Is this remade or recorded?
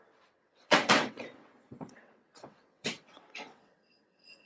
remade